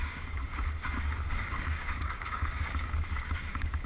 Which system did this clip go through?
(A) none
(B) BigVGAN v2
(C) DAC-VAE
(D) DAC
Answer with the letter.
D